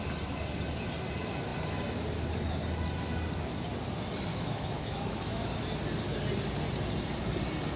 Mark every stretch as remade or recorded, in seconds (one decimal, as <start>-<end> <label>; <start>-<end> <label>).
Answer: 0.0-4.3 recorded; 4.3-5.5 remade; 5.5-7.8 recorded